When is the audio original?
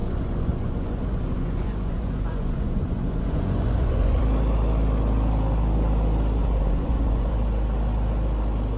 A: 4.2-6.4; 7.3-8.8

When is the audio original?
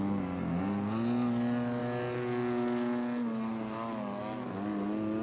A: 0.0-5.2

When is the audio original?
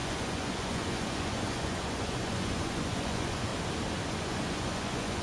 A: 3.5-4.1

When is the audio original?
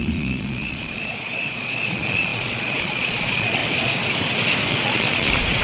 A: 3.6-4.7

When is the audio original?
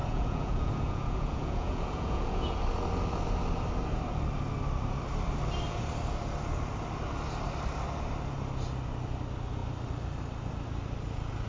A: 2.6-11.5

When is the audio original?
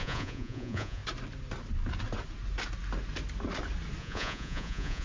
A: 1.0-4.0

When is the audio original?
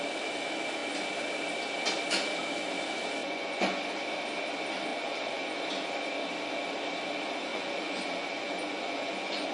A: 0.0-3.2; 3.8-4.9; 5.6-7.5